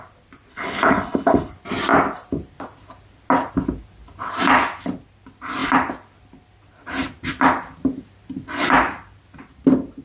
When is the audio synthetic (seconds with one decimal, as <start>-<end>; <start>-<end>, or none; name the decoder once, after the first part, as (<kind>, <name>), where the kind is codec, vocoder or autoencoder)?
0.5-1.5 (codec, HILCodec)